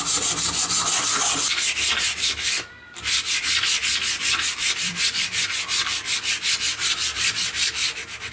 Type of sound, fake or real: fake